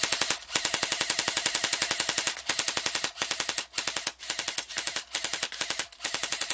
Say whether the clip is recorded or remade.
recorded